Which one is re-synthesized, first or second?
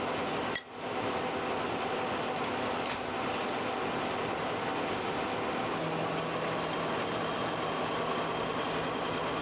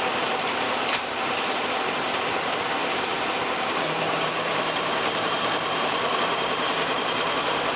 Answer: second